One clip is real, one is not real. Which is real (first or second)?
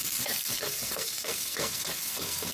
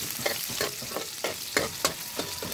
second